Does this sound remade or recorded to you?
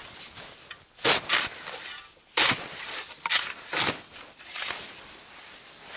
recorded